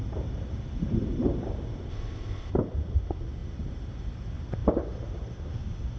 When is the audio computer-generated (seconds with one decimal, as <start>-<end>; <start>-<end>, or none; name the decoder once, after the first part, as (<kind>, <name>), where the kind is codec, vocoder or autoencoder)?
1.9-2.5 (codec, ZipCodec)